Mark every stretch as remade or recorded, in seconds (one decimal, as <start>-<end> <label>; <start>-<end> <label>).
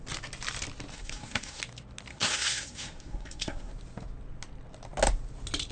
0.0-0.9 recorded; 0.9-1.6 remade; 1.6-2.1 recorded; 2.1-3.7 remade; 3.7-5.7 recorded